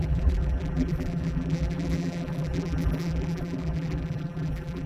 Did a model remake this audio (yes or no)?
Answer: yes